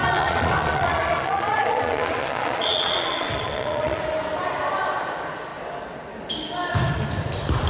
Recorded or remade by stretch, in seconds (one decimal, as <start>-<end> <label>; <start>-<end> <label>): 0.0-4.0 remade; 4.0-7.7 recorded

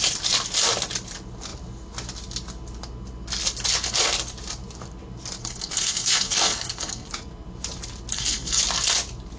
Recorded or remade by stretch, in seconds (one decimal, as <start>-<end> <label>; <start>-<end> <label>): 0.0-5.4 recorded; 5.4-7.1 remade; 7.1-8.1 recorded; 8.1-8.6 remade; 8.6-9.4 recorded

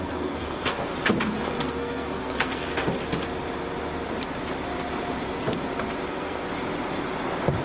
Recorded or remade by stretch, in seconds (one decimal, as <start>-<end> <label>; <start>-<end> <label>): 0.0-0.9 remade; 0.9-1.6 recorded; 1.6-2.7 remade; 2.7-6.1 recorded; 6.1-6.5 remade; 6.5-7.6 recorded

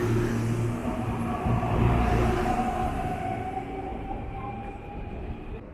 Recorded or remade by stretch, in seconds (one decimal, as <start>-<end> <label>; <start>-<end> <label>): 0.0-0.8 recorded; 0.8-2.7 remade; 2.7-3.9 recorded; 3.9-5.1 remade; 5.1-5.7 recorded

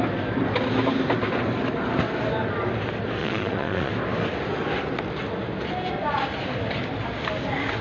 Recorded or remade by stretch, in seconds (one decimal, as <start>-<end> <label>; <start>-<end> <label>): 0.0-3.2 recorded; 3.2-3.9 remade; 3.9-7.8 recorded

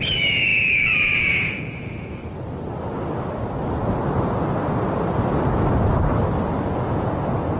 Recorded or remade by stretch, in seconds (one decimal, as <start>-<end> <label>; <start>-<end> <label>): 0.0-2.2 remade; 2.2-6.7 recorded; 6.7-7.6 remade